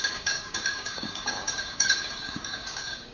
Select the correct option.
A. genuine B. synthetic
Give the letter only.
B